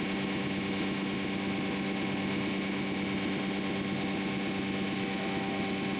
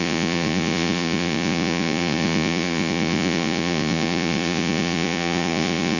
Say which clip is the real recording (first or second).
first